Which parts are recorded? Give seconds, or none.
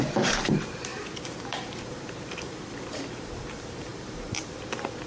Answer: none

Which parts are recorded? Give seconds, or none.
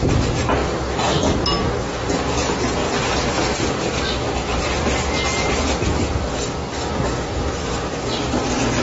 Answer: 0.0-8.8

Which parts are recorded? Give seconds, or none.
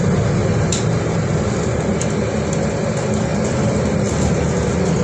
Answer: 0.0-0.4; 2.0-3.3; 4.3-5.0